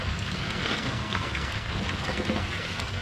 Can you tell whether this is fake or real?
fake